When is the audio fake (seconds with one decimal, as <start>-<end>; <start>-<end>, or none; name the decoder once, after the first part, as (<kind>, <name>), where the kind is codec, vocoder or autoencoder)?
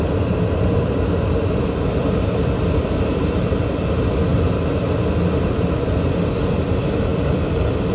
2.0-3.9 (vocoder, BigVGAN v2); 4.3-4.9; 7.1-7.9